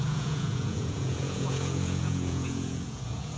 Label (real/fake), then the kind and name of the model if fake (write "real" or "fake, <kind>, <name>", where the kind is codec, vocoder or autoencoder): fake, vocoder, Vocos